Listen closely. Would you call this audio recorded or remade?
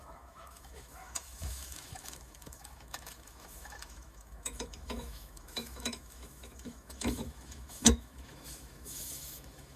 remade